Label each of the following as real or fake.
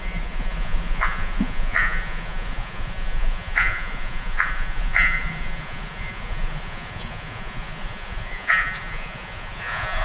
fake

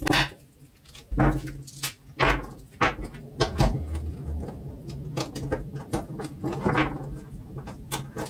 real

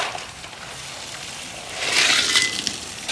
real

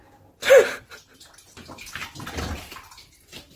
real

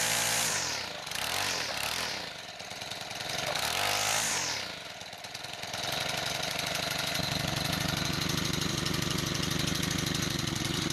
real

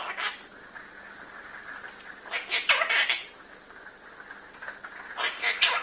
real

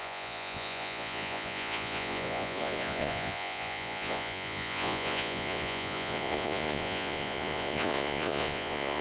fake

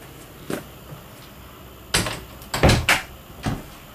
real